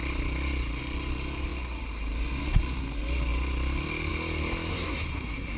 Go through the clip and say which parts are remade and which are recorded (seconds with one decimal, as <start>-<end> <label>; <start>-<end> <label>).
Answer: 0.0-4.7 recorded; 4.7-5.6 remade